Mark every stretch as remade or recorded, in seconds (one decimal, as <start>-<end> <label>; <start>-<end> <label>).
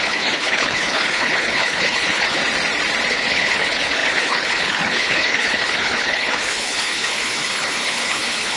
0.0-2.4 remade; 2.4-3.1 recorded; 3.1-8.6 remade